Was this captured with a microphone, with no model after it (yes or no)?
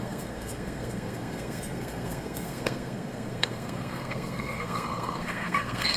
no